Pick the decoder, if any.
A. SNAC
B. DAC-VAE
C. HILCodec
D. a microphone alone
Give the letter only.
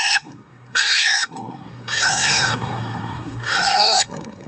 A